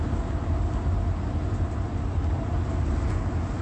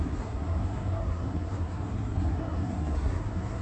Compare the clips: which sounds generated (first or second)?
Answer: second